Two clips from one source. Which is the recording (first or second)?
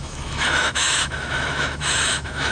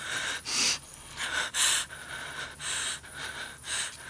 second